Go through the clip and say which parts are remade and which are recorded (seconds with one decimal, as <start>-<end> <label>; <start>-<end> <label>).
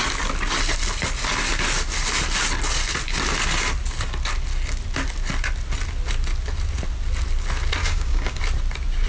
0.0-7.8 recorded; 7.8-8.4 remade; 8.4-9.1 recorded